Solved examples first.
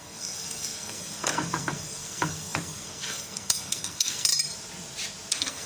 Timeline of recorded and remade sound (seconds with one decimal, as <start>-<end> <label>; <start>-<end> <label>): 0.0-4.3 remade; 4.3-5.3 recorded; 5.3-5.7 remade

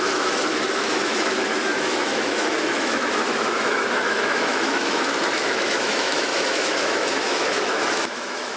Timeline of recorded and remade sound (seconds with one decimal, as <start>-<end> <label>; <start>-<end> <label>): 0.0-8.6 remade

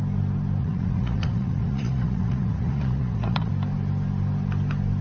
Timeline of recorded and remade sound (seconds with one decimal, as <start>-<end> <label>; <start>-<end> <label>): 0.0-0.6 recorded; 0.6-3.5 remade; 3.5-5.0 recorded

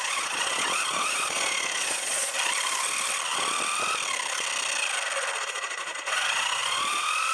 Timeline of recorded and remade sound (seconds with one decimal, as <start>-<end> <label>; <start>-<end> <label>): 0.0-2.3 remade; 2.3-5.4 recorded; 5.4-7.3 remade

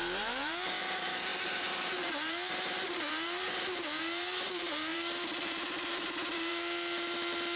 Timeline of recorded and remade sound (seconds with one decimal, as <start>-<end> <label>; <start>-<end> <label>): 0.0-7.6 remade

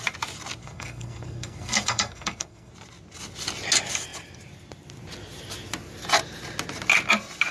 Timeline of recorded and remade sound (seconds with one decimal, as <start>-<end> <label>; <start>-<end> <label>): 0.0-0.6 recorded; 0.6-2.7 remade; 2.7-7.5 recorded